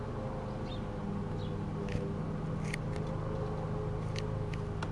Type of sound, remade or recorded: recorded